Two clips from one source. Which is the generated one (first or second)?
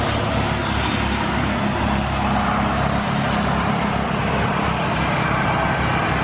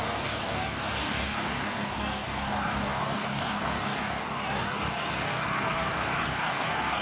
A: second